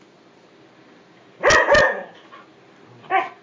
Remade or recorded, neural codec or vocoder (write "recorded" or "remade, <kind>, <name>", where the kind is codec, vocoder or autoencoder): recorded